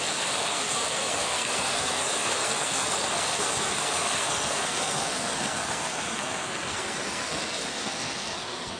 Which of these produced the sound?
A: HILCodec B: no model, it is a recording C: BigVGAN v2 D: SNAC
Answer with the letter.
D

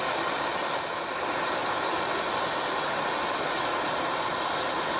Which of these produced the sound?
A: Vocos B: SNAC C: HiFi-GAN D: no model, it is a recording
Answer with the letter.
D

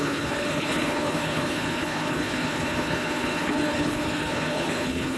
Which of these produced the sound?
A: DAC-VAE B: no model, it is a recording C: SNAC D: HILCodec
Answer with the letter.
D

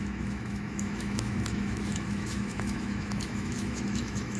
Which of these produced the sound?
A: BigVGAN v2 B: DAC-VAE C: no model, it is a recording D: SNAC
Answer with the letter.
B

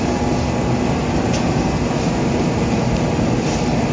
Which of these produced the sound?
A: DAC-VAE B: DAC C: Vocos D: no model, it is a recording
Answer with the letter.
D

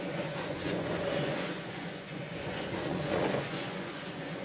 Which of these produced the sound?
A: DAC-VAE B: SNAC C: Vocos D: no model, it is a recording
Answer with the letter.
C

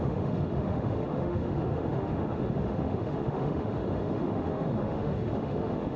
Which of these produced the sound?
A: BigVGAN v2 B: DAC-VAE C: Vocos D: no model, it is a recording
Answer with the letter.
B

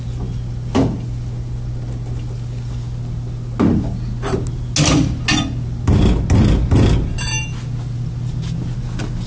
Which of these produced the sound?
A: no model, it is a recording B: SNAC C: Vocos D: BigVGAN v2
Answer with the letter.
A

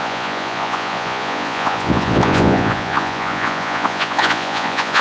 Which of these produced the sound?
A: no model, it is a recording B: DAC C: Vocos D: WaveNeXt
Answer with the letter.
C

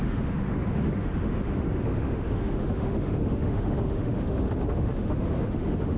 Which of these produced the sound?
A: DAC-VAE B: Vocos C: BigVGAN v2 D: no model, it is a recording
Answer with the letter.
A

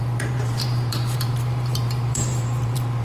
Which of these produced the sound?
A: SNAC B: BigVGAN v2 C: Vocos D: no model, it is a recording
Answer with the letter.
B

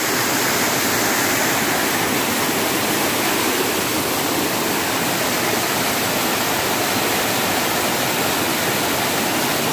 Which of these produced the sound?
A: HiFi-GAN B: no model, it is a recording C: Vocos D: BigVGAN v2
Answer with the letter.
B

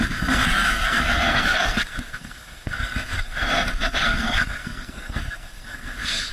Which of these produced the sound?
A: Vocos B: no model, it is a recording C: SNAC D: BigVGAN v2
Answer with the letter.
C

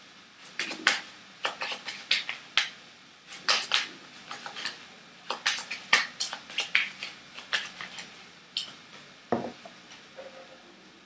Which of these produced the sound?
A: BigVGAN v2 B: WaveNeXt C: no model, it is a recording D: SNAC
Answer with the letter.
C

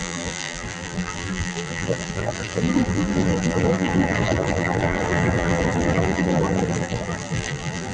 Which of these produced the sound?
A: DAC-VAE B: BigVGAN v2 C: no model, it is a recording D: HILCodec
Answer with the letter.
B